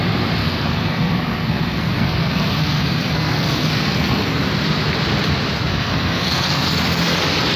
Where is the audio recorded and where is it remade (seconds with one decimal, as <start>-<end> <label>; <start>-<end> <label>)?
0.0-0.4 recorded; 0.4-4.4 remade; 4.4-5.7 recorded; 5.7-6.7 remade; 6.7-7.6 recorded

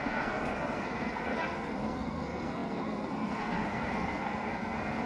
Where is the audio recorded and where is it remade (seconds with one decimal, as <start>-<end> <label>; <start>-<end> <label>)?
0.0-5.1 remade

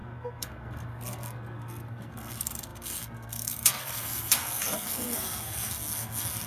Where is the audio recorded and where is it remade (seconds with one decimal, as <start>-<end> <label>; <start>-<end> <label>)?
0.0-6.5 remade

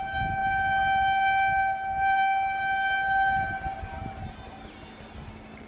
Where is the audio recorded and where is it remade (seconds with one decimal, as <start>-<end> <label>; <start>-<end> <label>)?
0.0-5.7 recorded